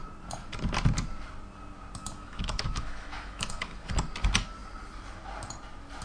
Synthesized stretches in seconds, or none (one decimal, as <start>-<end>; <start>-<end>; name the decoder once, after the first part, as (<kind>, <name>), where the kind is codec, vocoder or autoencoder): 2.0-3.9 (autoencoder, DAC-VAE)